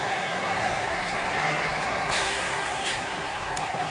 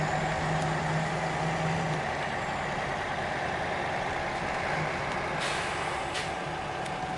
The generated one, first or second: first